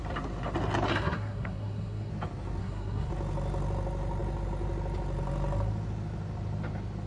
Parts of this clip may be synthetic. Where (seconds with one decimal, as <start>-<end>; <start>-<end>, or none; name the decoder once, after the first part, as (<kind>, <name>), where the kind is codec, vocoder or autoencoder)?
0.9-2.1 (codec, SNAC); 2.6-3.1